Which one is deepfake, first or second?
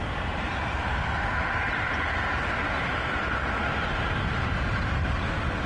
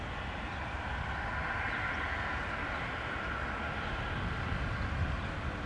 first